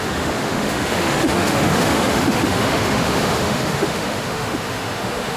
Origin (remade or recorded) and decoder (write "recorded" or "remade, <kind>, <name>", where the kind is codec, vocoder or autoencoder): remade, autoencoder, DAC-VAE